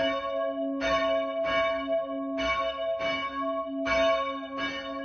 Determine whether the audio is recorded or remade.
recorded